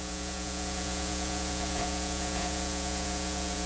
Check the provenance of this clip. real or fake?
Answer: fake